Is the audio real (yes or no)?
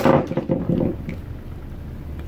yes